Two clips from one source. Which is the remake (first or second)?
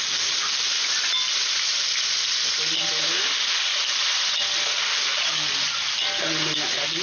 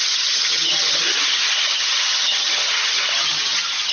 second